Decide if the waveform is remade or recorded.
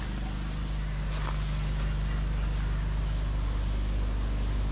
recorded